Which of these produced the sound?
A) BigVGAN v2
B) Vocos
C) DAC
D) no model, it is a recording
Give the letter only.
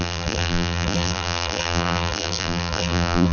A